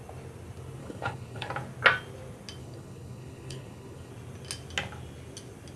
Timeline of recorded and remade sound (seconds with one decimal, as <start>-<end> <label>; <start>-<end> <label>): 0.0-0.8 recorded; 0.8-1.5 remade; 1.5-2.6 recorded; 2.6-4.1 remade; 4.1-5.8 recorded